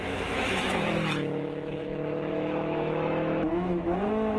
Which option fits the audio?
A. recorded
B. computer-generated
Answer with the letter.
B